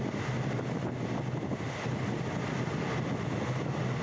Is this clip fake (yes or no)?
no